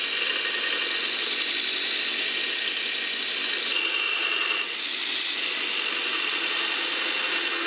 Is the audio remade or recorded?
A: recorded